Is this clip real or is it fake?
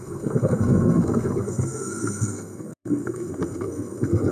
fake